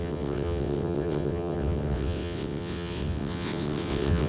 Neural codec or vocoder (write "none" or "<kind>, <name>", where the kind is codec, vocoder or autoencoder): vocoder, WaveNeXt